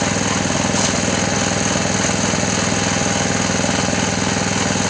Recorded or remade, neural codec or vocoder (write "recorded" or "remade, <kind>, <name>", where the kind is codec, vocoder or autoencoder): recorded